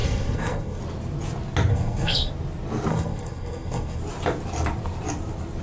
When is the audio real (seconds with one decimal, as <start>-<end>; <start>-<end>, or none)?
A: 0.8-1.7; 2.3-2.9; 4.0-5.6

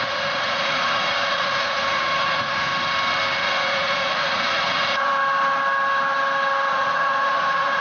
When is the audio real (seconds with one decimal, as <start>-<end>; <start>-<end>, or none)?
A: 2.7-3.4; 5.1-6.7

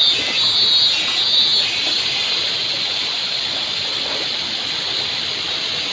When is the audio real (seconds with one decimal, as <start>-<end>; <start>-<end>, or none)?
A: 0.0-2.5; 3.4-5.9

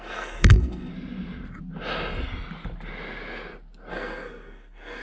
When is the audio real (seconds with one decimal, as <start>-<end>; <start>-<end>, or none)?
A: 0.9-3.9

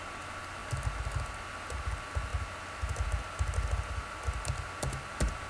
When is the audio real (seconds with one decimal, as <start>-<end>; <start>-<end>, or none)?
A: 0.0-5.5